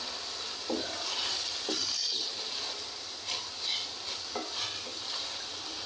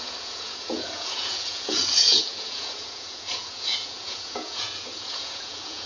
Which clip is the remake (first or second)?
second